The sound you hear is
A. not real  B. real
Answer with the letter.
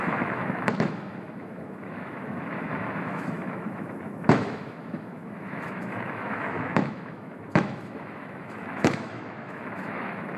A